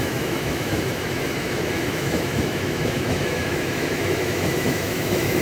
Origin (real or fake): fake